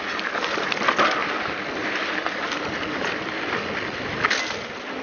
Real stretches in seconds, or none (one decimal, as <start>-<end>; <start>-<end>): 0.0-1.2; 4.0-5.0